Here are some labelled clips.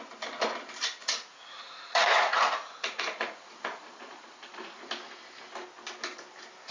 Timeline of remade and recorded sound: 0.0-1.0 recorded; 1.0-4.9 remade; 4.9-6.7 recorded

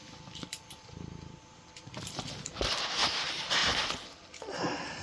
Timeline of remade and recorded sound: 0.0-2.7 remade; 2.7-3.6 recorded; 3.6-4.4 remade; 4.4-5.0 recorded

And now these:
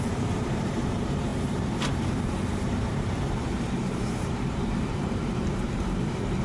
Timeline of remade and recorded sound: 0.0-6.4 remade

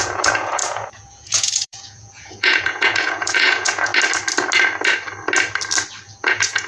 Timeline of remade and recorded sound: 0.0-3.9 remade; 3.9-6.0 recorded; 6.0-6.7 remade

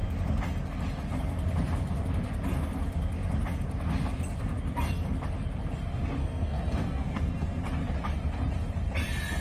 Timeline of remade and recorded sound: 0.0-6.2 recorded; 6.2-7.6 remade; 7.6-9.4 recorded

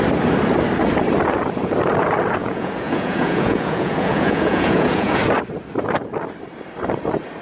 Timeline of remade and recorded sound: 0.0-2.4 recorded; 2.4-5.2 remade; 5.2-7.4 recorded